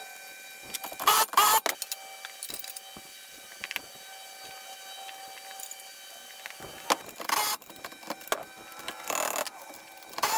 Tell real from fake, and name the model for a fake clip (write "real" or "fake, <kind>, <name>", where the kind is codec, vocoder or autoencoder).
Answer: real